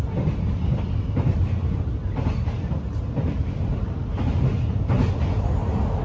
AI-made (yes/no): no